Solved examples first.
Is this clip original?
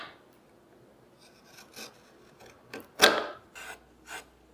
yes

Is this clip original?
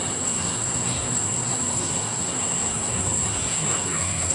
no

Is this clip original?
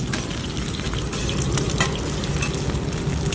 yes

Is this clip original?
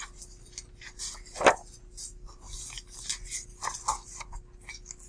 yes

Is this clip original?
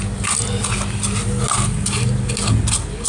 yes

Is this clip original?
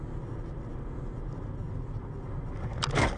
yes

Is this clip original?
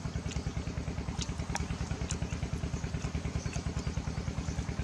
yes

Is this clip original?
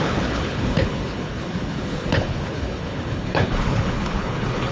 no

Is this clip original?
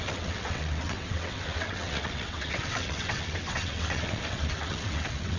no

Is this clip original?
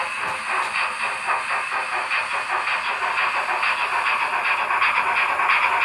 yes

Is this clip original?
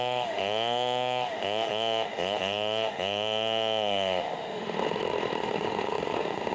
no